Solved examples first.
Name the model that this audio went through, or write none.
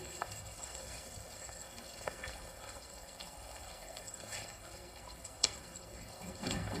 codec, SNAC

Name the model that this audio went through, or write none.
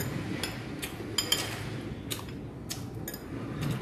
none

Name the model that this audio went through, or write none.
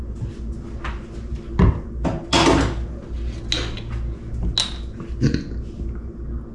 none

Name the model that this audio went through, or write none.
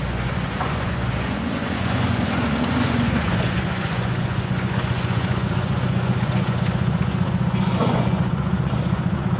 vocoder, Vocos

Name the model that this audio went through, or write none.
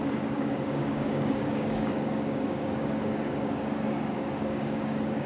codec, DAC